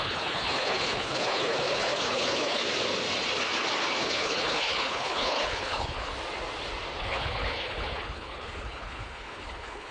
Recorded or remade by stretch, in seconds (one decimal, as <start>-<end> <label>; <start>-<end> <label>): 0.0-2.6 remade; 2.6-4.0 recorded; 4.0-6.1 remade; 6.1-7.0 recorded; 7.0-9.9 remade